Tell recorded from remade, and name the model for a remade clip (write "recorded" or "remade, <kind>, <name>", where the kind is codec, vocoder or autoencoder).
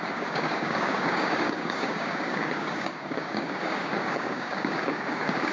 remade, codec, DAC